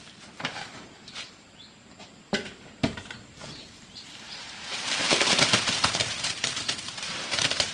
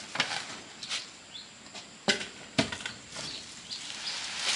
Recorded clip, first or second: second